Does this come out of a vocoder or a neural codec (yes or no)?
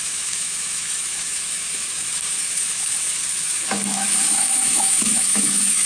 yes